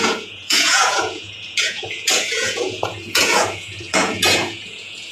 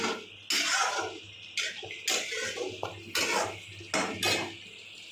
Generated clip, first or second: first